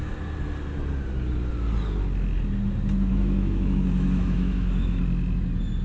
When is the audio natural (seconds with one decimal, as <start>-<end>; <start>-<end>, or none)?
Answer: 0.0-3.1; 5.0-5.8